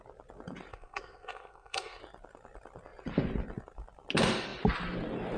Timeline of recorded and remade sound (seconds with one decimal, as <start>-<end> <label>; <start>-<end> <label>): 0.0-0.7 recorded; 0.7-2.0 remade; 2.0-5.4 recorded